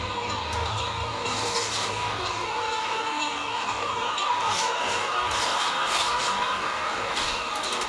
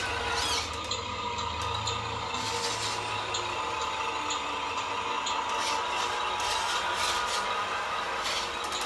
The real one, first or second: second